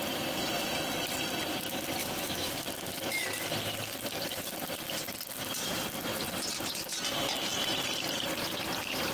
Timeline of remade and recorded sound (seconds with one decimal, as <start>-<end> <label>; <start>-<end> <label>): 0.0-2.0 recorded; 2.0-2.7 remade; 2.7-9.1 recorded